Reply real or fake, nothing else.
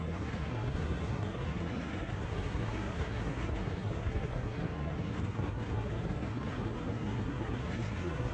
fake